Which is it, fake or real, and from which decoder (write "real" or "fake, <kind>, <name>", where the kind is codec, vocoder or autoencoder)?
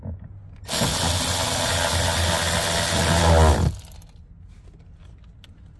real